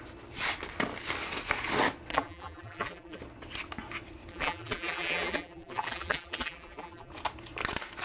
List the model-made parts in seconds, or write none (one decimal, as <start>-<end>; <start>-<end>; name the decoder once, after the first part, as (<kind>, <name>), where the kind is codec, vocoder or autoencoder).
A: 2.1-3.2 (vocoder, BigVGAN v2); 4.3-7.1